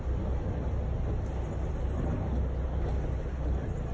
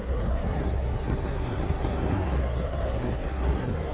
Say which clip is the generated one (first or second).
second